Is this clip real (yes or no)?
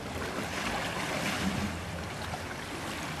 yes